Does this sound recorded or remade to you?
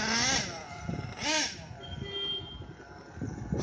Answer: recorded